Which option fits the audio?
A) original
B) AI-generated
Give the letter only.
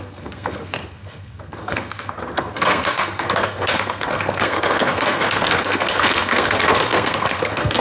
B